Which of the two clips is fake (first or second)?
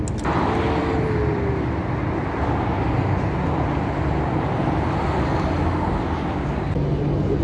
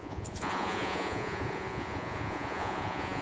second